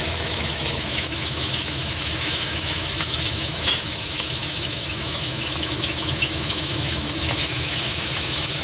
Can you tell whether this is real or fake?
fake